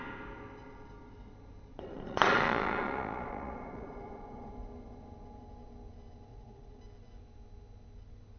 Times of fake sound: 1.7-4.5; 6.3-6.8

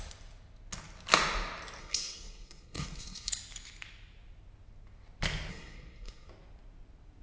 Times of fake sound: 1.8-3.3; 5.5-6.3